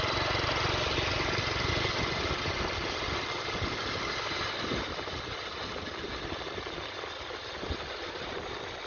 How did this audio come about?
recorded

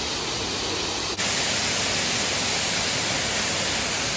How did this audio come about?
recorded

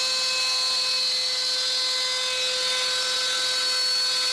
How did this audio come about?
recorded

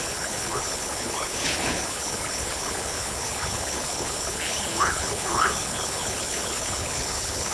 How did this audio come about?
remade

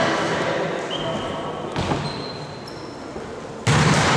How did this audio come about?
recorded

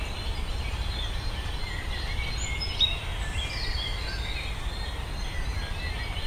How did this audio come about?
recorded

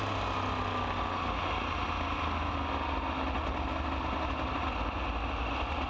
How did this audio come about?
recorded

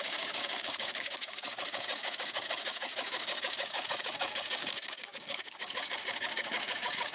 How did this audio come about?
remade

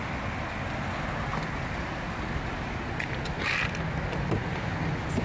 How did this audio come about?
recorded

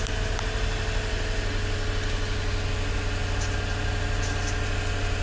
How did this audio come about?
recorded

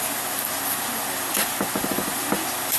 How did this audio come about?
remade